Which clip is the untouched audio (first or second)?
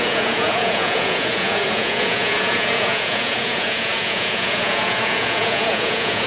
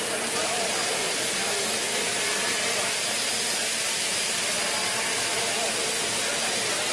second